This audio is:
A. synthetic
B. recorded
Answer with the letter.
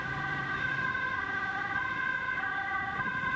A